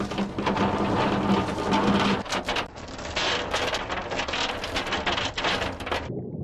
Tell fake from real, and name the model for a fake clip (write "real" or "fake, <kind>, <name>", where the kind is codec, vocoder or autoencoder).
real